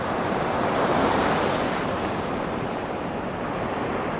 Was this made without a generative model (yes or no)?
no